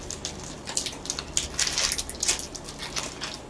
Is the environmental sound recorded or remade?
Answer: recorded